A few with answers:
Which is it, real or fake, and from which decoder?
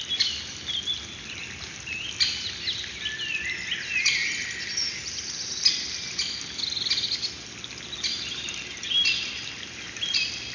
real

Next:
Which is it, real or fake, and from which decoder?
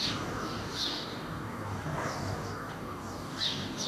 fake, codec, DAC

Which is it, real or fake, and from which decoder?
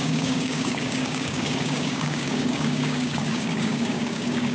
fake, codec, DAC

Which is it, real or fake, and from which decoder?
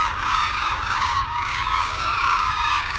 fake, codec, DAC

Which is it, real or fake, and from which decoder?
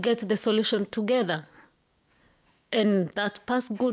fake, codec, DAC